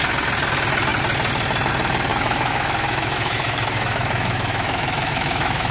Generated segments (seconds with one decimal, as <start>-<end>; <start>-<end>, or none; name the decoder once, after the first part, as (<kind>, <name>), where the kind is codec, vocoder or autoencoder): 2.1-5.7 (autoencoder, DAC-VAE)

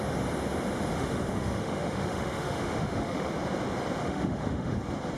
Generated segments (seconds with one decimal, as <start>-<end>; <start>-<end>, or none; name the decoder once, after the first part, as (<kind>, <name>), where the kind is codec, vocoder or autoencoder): 0.9-3.3 (autoencoder, DAC-VAE); 4.0-4.8